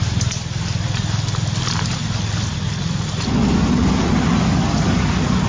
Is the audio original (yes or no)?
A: yes